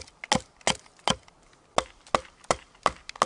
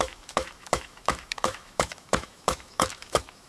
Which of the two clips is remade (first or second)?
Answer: second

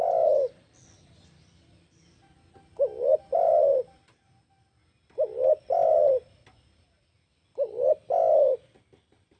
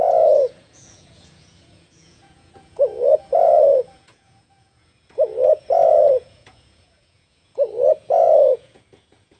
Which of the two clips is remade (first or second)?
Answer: second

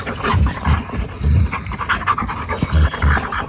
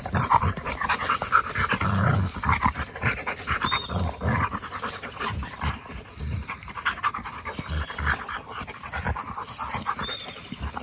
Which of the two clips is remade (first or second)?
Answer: second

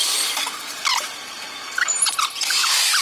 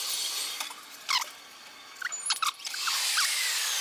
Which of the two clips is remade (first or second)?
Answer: first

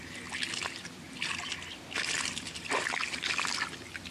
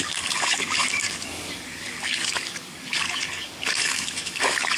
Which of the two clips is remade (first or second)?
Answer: second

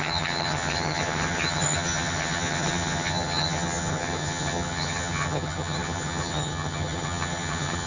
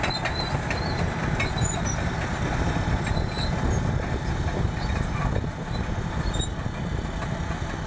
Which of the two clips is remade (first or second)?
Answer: first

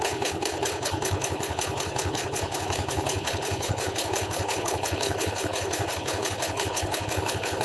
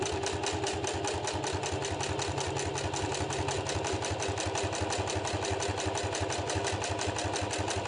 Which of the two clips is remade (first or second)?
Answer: first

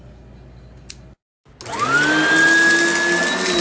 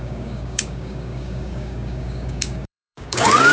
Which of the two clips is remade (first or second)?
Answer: second